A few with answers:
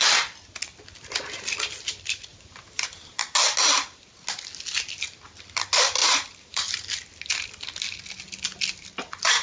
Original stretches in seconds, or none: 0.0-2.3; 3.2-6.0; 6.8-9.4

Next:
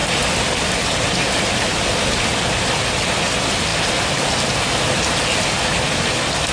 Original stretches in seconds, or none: 0.0-6.5

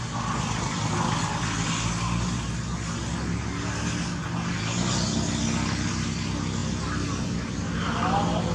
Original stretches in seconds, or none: 0.0-8.5

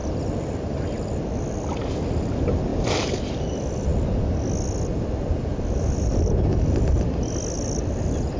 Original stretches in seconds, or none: 0.5-8.4